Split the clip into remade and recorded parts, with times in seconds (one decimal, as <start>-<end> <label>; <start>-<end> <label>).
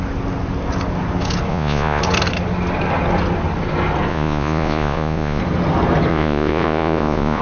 0.0-1.5 recorded; 1.5-2.0 remade; 2.0-4.1 recorded; 4.1-5.4 remade; 5.4-6.1 recorded; 6.1-7.4 remade